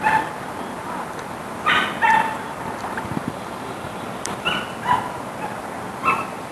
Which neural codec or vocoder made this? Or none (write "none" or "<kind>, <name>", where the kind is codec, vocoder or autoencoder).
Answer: none